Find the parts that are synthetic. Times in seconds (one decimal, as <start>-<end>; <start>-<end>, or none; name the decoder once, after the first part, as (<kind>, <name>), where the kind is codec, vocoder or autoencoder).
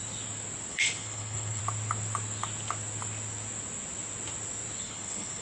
0.7-1.6 (codec, HILCodec); 4.8-5.4